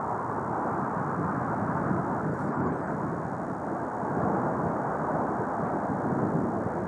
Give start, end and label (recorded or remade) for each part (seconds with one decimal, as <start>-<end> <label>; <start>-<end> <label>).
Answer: 0.0-2.3 recorded; 2.3-2.9 remade; 2.9-6.9 recorded